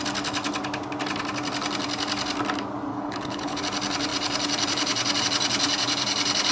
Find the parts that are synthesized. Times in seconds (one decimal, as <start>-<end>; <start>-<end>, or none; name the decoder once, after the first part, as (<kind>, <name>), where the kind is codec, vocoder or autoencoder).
2.9-3.6 (codec, HILCodec)